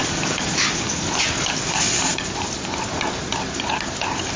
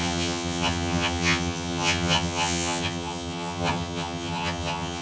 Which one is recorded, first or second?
first